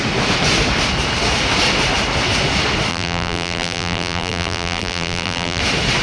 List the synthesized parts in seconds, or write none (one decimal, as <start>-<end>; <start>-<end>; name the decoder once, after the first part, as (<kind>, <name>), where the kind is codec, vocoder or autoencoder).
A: 2.9-5.6 (vocoder, BigVGAN v2)